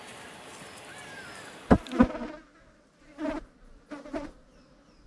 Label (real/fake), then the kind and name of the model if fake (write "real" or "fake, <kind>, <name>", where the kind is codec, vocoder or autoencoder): real